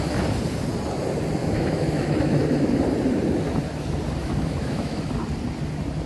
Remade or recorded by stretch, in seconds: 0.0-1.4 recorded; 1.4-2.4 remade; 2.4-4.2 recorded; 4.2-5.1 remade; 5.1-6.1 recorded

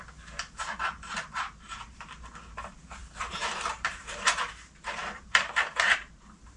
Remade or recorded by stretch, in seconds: 0.0-6.6 remade

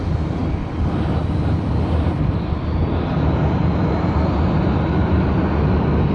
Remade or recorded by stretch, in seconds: 0.0-6.1 recorded

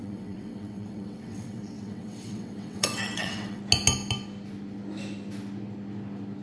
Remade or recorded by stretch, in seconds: 0.0-3.6 remade; 3.6-6.4 recorded

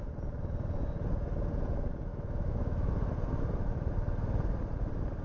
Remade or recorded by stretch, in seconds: 0.0-2.1 recorded; 2.1-2.9 remade; 2.9-5.2 recorded

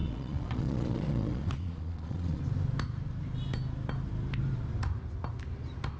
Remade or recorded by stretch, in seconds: 0.0-2.4 remade; 2.4-6.0 recorded

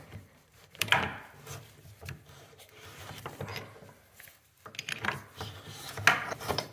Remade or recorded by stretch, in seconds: 0.0-1.1 remade; 1.1-2.3 recorded; 2.3-3.5 remade; 3.5-6.2 recorded; 6.2-6.7 remade

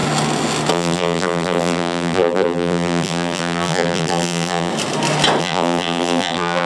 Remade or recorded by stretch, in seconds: 0.0-0.7 recorded; 0.7-4.7 remade; 4.7-5.4 recorded; 5.4-6.7 remade